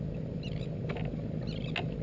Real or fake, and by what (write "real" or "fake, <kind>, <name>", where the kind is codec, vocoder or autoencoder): real